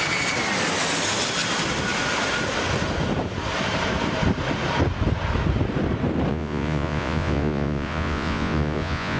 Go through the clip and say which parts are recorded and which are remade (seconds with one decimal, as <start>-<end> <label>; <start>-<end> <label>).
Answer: 0.0-6.3 recorded; 6.3-9.2 remade